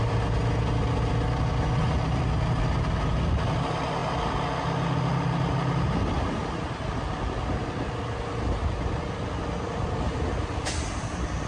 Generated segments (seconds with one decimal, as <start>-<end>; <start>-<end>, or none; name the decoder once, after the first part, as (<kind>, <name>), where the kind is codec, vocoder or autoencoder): none